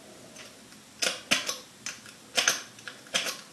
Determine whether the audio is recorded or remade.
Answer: recorded